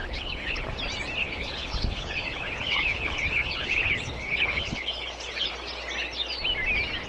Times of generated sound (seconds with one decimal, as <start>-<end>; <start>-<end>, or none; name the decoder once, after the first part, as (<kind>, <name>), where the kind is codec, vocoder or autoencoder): 0.0-0.7 (codec, HILCodec); 1.2-5.5

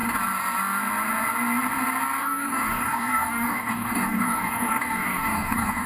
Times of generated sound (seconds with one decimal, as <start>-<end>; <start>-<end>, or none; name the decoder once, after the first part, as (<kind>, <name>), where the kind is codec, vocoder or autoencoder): 2.2-5.9 (codec, DAC)

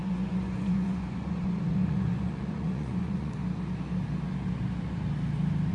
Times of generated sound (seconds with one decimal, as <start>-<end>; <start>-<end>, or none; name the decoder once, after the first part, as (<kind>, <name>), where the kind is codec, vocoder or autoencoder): 0.0-3.4 (vocoder, Vocos)

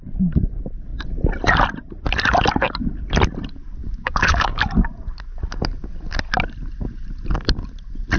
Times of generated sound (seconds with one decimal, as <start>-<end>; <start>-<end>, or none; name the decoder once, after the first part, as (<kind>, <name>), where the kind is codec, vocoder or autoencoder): 3.8-4.6 (codec, DAC)

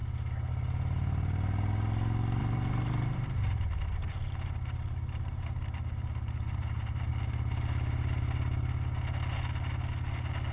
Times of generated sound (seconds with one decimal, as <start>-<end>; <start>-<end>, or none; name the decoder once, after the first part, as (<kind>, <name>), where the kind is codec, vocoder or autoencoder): 2.4-7.1 (vocoder, BigVGAN v2)

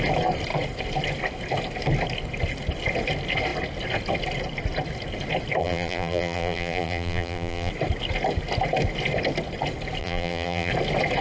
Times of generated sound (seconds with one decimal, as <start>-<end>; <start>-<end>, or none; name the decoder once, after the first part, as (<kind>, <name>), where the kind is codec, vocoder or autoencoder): 5.6-7.7 (vocoder, BigVGAN v2); 10.0-10.7

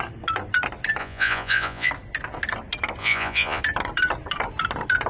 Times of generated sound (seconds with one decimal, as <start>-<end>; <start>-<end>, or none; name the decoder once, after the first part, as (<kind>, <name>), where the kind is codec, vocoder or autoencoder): 1.0-1.9 (vocoder, Vocos); 3.0-3.6

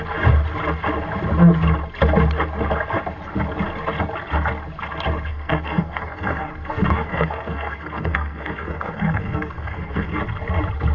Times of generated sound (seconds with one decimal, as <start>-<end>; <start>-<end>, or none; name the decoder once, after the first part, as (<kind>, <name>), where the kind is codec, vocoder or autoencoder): 5.3-10.2 (codec, SNAC)